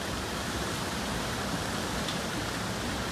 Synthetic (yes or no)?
no